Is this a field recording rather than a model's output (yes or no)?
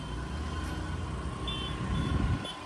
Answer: yes